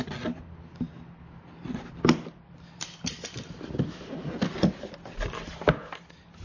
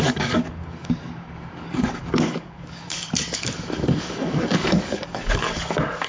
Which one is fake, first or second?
second